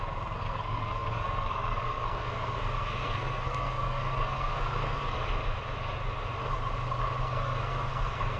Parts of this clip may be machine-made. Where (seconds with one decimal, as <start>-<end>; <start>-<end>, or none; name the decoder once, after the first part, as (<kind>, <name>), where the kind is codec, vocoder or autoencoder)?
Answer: 0.0-5.2 (codec, SNAC); 7.2-8.4